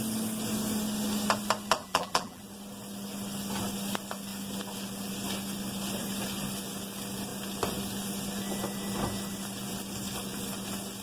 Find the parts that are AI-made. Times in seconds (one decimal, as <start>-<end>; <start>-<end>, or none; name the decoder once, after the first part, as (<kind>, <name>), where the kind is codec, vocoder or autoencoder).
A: 1.8-2.4 (vocoder, BigVGAN v2)